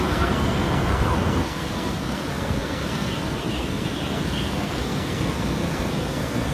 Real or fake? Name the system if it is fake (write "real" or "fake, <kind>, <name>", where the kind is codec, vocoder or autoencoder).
fake, codec, SNAC